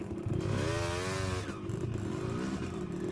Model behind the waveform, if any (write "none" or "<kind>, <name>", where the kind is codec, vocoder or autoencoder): none